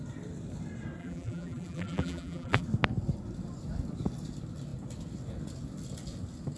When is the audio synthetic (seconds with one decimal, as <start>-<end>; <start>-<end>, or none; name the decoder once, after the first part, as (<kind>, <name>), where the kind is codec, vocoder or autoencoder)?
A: 1.0-2.6 (vocoder, BigVGAN v2)